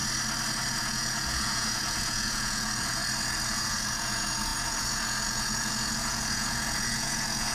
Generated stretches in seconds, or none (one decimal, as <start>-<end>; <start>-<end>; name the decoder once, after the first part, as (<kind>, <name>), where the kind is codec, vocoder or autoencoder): 0.7-3.0 (vocoder, Vocos); 3.5-7.5